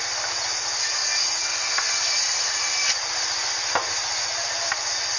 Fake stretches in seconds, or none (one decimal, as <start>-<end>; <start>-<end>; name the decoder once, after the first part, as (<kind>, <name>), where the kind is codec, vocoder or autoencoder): none